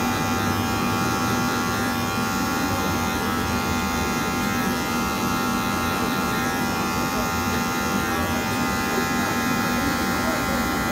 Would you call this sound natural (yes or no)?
no